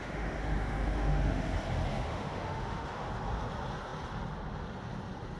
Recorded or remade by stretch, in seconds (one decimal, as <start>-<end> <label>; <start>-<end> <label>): 0.0-1.5 remade; 1.5-1.9 recorded; 1.9-3.1 remade; 3.1-5.4 recorded